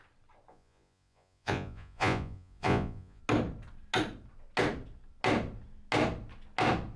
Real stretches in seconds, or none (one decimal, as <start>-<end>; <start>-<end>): 0.0-0.5; 3.2-7.0